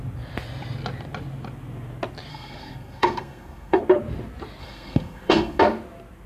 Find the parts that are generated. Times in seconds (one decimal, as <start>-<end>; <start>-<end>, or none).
2.3-3.8; 4.6-5.6